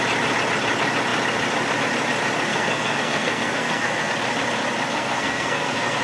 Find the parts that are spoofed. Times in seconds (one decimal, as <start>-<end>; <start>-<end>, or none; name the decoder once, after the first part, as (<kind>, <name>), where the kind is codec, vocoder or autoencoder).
2.5-4.1 (codec, SNAC); 4.9-6.0